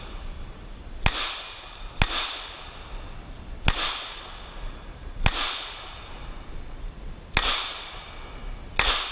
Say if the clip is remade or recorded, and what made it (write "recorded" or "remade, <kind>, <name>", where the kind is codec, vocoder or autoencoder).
recorded